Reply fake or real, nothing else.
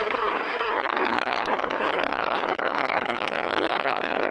fake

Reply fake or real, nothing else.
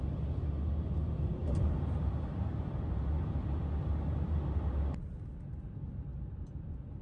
real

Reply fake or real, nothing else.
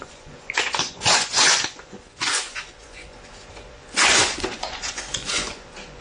fake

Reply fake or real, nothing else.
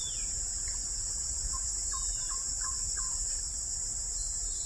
fake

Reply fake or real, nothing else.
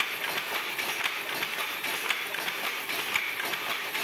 real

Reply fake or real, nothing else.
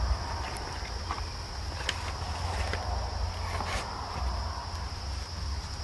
real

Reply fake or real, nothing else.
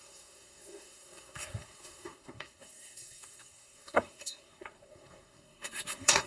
fake